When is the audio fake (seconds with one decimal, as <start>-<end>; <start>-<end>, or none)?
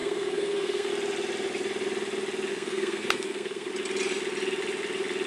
0.0-0.9; 2.5-3.7